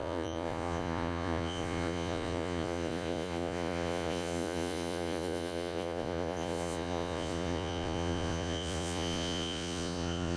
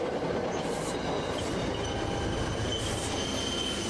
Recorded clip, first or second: second